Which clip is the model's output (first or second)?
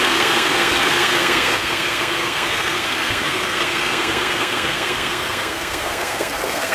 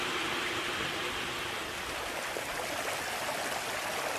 first